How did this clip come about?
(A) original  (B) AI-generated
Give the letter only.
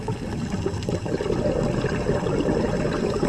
A